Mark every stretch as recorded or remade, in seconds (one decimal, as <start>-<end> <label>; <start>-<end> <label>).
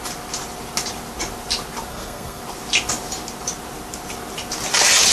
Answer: 0.0-1.9 recorded; 1.9-2.4 remade; 2.4-5.1 recorded